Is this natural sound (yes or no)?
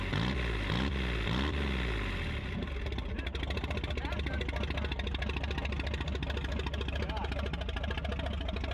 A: yes